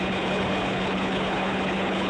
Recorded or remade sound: remade